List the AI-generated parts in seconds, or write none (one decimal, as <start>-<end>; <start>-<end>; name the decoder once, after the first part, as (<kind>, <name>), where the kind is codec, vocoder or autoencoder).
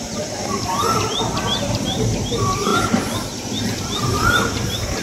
0.0-2.7 (vocoder, BigVGAN v2); 3.8-5.0